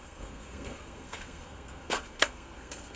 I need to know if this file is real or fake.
fake